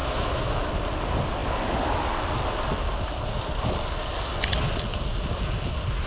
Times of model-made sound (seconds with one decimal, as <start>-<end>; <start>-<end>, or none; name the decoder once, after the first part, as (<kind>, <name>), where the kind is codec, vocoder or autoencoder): 0.0-0.7 (autoencoder, DAC-VAE)